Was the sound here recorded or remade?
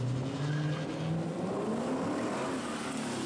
recorded